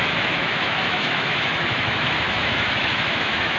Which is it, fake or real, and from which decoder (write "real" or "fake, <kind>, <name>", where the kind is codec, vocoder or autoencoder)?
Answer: fake, autoencoder, DAC-VAE